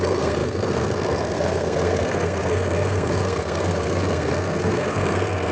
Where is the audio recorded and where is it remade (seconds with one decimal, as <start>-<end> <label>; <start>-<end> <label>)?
0.0-5.5 remade